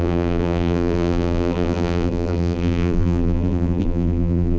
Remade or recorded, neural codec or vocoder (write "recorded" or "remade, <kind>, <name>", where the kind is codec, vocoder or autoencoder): remade, vocoder, BigVGAN v2